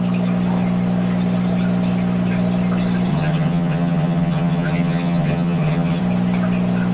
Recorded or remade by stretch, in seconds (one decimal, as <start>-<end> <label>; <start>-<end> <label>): 0.0-3.1 recorded; 3.1-6.0 remade; 6.0-6.9 recorded